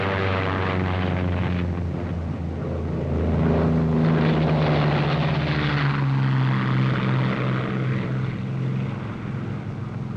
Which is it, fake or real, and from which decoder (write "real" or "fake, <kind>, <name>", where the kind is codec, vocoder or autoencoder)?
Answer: real